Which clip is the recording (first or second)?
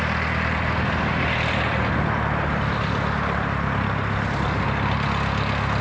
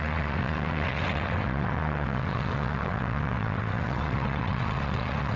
first